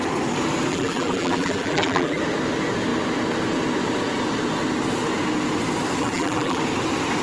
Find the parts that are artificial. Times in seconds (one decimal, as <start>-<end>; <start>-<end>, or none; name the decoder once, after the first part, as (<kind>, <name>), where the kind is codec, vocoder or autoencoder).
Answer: 0.7-2.2 (vocoder, BigVGAN v2); 6.0-6.6